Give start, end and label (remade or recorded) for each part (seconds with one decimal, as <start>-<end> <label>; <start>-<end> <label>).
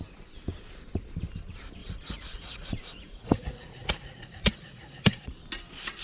0.0-1.8 recorded; 1.8-5.4 remade; 5.4-6.0 recorded